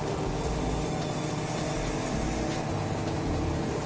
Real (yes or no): yes